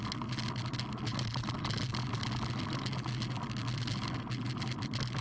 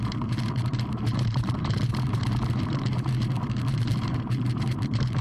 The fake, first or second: second